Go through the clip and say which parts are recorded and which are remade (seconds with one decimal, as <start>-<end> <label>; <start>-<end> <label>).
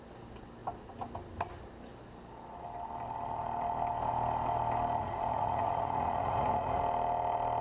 0.0-5.0 recorded; 5.0-6.8 remade; 6.8-7.6 recorded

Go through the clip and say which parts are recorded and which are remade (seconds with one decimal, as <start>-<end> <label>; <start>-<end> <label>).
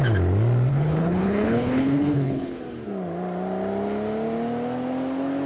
0.0-0.7 recorded; 0.7-2.6 remade; 2.6-5.5 recorded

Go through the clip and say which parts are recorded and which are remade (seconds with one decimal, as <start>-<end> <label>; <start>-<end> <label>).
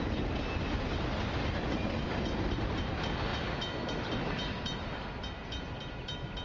0.0-6.4 recorded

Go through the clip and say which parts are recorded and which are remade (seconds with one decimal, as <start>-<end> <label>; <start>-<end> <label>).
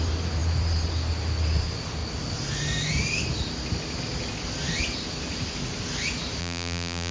0.0-6.4 recorded; 6.4-7.1 remade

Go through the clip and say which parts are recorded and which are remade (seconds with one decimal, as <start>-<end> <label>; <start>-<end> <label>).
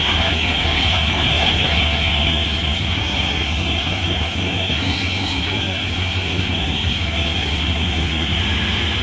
0.0-8.4 remade; 8.4-9.0 recorded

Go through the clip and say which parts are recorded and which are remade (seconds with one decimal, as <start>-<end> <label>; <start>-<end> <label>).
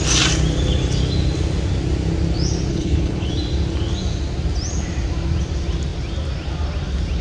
0.0-2.7 recorded; 2.7-3.3 remade; 3.3-7.2 recorded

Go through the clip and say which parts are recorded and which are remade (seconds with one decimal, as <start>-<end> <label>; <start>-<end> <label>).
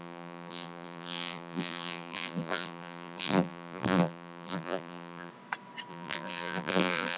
0.0-5.3 remade; 5.3-5.9 recorded; 5.9-7.2 remade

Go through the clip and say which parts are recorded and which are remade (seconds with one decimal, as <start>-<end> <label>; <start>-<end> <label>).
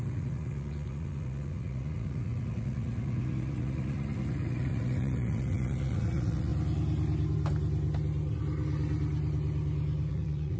0.0-6.5 remade; 6.5-10.1 recorded; 10.1-10.6 remade